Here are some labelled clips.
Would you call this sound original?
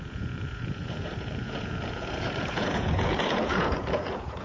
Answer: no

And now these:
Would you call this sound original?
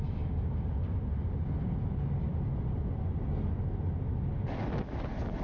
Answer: yes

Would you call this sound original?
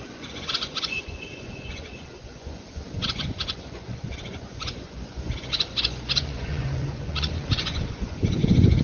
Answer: no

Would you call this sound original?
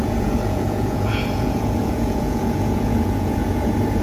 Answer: no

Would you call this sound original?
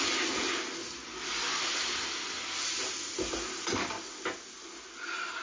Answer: yes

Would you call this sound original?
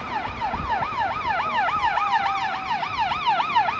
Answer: yes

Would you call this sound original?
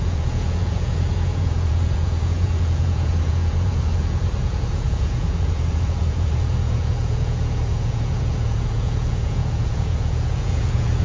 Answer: no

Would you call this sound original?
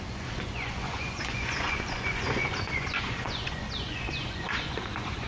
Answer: no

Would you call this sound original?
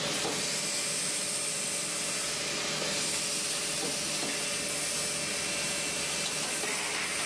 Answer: yes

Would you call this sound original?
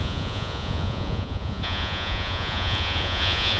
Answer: no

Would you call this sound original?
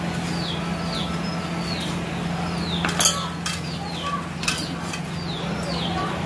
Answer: yes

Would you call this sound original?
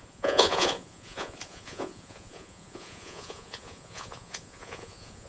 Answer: no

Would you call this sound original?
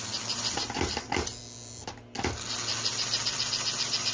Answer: yes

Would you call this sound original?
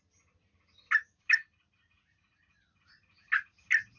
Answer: yes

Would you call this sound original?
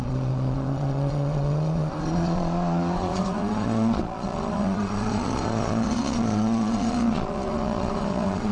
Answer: no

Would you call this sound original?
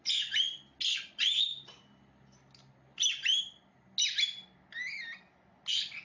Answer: yes